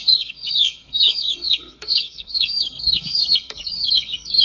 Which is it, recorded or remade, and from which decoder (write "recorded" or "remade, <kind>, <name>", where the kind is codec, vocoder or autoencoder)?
remade, codec, SNAC